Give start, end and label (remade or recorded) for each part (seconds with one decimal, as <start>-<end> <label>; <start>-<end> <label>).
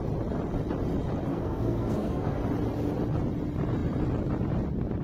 0.0-1.3 recorded; 1.3-2.4 remade; 2.4-5.0 recorded